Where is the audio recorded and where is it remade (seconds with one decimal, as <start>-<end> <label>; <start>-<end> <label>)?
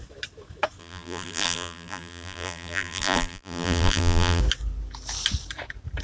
0.0-0.8 recorded; 0.8-4.4 remade; 4.4-6.0 recorded